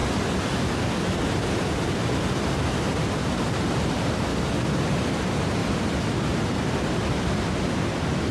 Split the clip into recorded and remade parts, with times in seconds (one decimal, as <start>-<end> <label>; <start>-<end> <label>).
0.0-1.7 recorded; 1.7-4.3 remade; 4.3-5.1 recorded; 5.1-5.6 remade; 5.6-6.1 recorded; 6.1-8.3 remade